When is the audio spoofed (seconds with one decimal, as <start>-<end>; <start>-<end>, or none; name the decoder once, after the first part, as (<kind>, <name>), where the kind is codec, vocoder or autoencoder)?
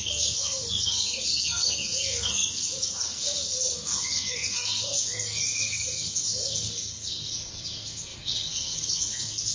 0.0-9.5 (codec, SNAC)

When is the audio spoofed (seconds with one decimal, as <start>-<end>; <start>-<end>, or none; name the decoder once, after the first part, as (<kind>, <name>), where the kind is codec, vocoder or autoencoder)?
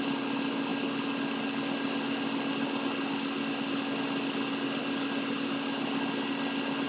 none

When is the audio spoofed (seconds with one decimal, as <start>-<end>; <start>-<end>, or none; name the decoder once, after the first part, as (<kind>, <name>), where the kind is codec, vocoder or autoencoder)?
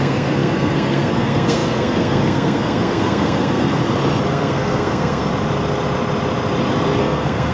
0.0-3.8 (codec, SNAC); 4.3-5.2; 7.0-7.5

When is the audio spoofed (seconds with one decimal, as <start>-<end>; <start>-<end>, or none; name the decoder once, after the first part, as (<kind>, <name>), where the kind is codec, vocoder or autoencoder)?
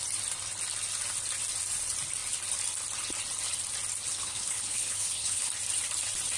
4.1-5.5 (codec, HILCodec)